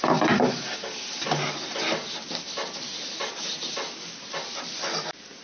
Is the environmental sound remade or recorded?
recorded